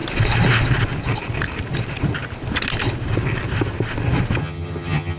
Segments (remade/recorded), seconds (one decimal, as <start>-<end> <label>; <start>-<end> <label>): 0.0-4.4 recorded; 4.4-5.2 remade